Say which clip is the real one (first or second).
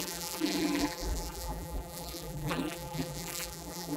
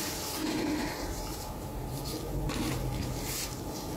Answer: second